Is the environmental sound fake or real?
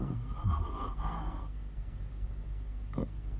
fake